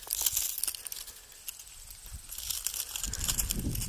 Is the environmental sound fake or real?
real